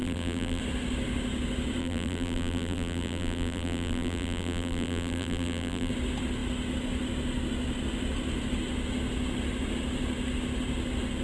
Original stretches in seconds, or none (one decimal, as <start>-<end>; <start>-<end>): 0.6-1.8; 5.9-11.2